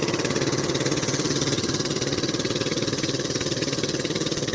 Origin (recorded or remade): remade